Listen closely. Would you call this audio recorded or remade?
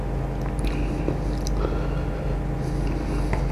recorded